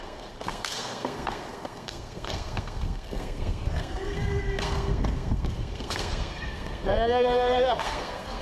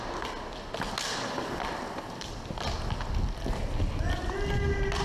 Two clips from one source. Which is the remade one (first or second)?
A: first